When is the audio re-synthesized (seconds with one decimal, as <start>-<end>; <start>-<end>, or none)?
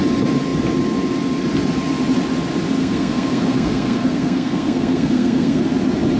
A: 2.8-5.6